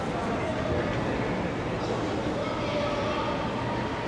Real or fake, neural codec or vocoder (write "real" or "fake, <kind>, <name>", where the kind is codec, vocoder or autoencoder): real